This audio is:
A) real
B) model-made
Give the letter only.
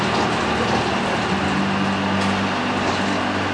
A